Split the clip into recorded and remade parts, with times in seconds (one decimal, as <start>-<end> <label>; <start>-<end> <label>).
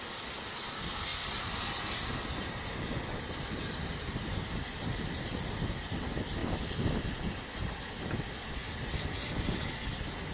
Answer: 0.0-10.3 recorded